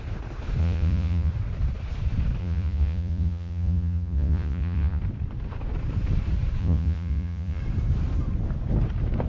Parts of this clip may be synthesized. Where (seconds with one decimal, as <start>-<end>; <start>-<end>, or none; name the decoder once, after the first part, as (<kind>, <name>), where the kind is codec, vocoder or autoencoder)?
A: 0.6-1.3 (vocoder, Vocos); 2.4-5.0; 6.6-7.6